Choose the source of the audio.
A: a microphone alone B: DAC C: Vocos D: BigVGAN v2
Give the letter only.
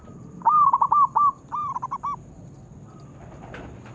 A